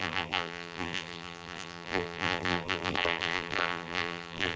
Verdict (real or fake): fake